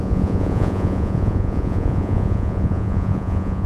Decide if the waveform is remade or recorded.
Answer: remade